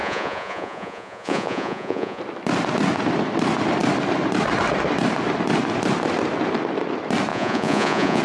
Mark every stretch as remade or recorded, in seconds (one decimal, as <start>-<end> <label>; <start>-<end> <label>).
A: 0.0-2.2 remade; 2.2-7.3 recorded; 7.3-8.2 remade